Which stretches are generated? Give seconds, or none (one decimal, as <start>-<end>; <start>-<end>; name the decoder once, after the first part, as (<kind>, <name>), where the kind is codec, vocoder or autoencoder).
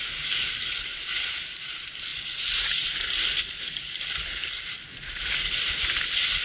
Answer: none